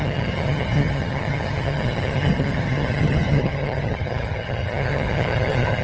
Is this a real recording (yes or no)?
no